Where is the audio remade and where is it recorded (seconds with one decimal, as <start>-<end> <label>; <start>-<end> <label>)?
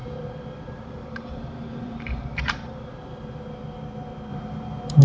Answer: 0.0-3.0 remade; 3.0-4.3 recorded; 4.3-5.0 remade